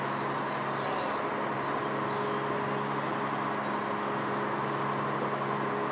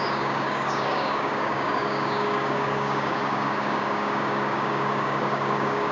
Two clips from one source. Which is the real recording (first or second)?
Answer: first